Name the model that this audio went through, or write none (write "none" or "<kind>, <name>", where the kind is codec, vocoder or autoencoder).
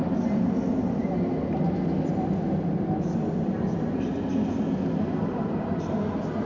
none